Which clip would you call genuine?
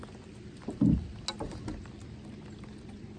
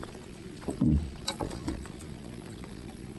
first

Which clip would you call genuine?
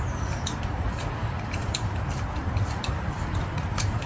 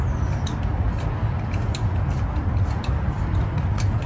second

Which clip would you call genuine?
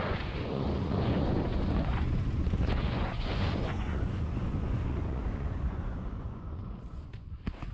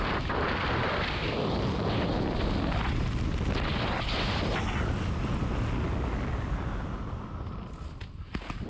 second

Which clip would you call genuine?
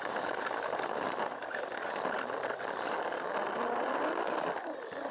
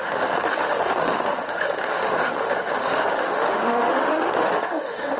first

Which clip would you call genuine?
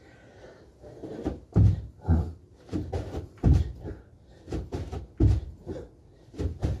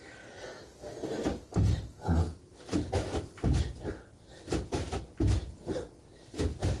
second